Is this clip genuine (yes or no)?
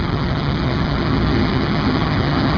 no